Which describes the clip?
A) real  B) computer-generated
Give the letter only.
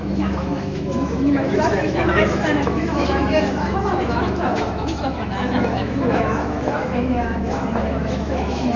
B